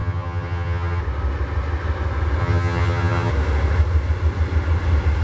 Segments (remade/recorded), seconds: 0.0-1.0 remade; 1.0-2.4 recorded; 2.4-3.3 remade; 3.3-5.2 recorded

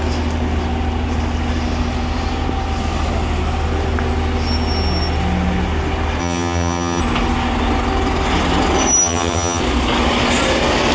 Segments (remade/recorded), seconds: 0.0-6.2 recorded; 6.2-7.0 remade; 7.0-9.0 recorded; 9.0-9.6 remade; 9.6-10.9 recorded